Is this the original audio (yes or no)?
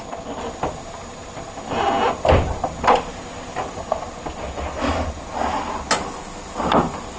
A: yes